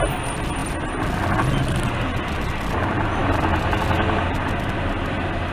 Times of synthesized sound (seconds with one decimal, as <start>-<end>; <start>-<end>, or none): none